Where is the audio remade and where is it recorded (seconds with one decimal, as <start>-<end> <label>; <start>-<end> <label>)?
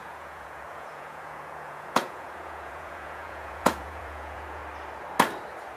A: 0.0-4.6 remade; 4.6-5.8 recorded